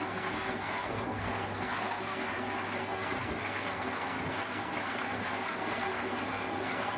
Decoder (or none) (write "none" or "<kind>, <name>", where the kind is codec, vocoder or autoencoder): codec, SNAC